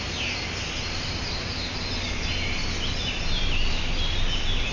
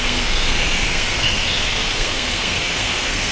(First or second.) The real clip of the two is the first